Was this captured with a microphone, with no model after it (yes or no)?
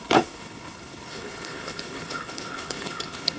no